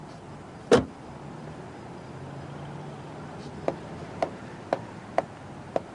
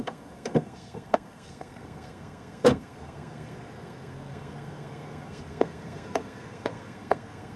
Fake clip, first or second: second